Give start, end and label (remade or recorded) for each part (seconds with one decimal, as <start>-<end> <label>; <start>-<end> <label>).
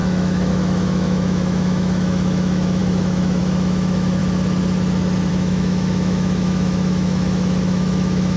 0.0-4.2 remade; 4.2-5.3 recorded; 5.3-8.4 remade